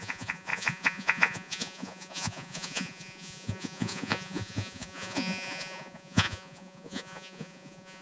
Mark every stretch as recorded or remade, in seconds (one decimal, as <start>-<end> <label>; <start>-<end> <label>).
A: 0.0-8.0 remade